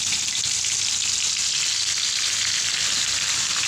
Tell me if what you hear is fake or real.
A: real